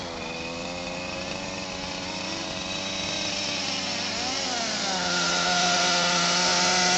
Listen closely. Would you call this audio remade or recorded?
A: recorded